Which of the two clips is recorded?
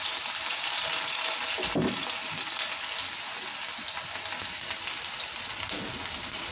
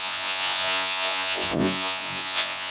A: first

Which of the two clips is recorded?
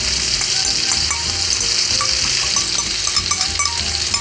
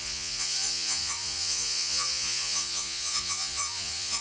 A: first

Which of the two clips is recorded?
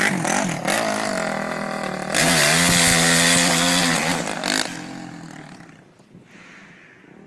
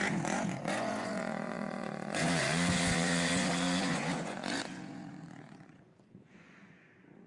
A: first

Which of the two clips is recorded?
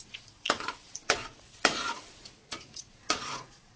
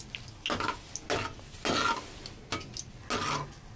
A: second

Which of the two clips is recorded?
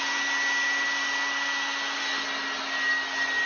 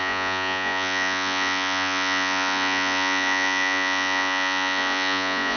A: first